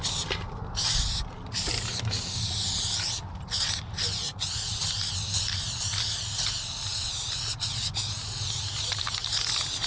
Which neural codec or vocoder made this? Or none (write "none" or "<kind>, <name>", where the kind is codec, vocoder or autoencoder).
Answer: none